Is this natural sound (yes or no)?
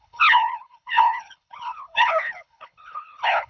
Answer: no